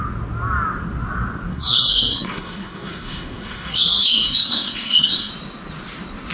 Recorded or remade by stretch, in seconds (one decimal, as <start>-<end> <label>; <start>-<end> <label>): 0.0-1.5 recorded; 1.5-5.3 remade; 5.3-6.3 recorded